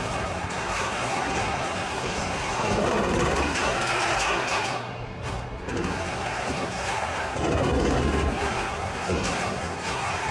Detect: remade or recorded remade